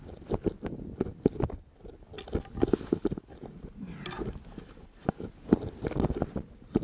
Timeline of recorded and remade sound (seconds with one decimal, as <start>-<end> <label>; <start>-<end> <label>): 0.0-6.8 recorded